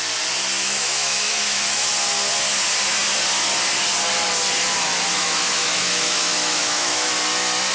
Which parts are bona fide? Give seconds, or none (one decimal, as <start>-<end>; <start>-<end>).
0.0-0.6; 1.9-5.1; 7.1-7.7

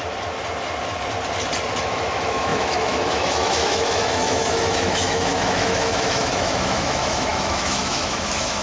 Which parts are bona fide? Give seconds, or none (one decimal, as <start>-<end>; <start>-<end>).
0.0-1.8

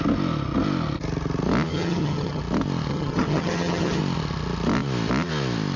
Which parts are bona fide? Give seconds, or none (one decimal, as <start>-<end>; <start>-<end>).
0.0-1.7; 2.4-2.9; 4.0-5.8

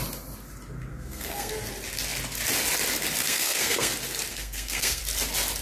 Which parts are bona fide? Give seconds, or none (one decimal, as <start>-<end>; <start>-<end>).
0.0-0.9; 1.5-3.2; 3.9-4.3; 5.0-5.6

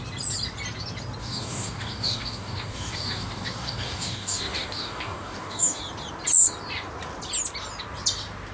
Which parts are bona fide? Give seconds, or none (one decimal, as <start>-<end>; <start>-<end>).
0.0-1.2; 5.8-8.5

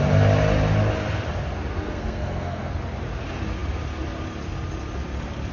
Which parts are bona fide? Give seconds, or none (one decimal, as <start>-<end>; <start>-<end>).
0.0-1.7; 2.7-5.5

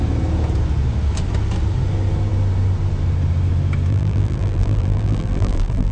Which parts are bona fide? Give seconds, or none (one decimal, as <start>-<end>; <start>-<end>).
0.0-3.9

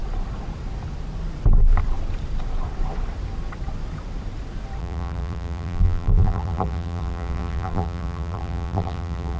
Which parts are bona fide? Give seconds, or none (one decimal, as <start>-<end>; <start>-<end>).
0.0-4.8